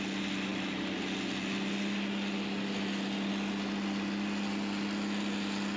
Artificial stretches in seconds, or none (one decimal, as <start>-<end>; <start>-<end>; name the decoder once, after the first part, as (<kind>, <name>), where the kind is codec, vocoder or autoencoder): none